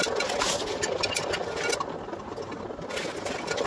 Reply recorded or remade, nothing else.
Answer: recorded